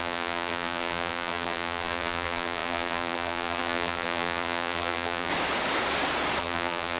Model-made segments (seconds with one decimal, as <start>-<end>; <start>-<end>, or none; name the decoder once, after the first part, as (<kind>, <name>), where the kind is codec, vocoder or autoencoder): 0.0-5.3 (vocoder, BigVGAN v2); 6.4-7.0